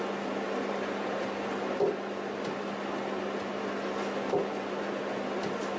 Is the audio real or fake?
real